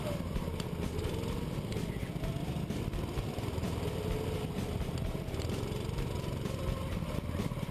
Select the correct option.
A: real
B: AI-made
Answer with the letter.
B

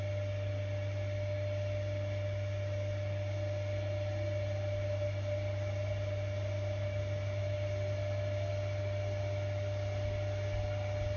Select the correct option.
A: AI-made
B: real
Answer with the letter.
B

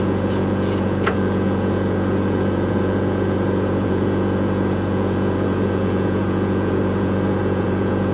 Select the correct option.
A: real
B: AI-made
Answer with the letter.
B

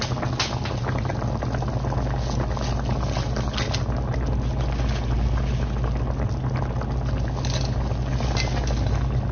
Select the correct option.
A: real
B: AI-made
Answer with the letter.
A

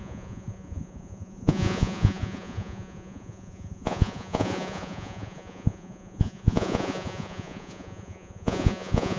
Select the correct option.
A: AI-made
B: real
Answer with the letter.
A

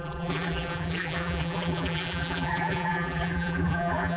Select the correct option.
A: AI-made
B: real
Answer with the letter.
A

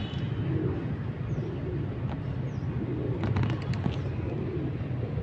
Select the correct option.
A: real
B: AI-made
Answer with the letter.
A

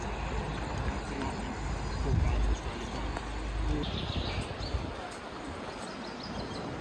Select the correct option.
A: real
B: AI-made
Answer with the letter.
A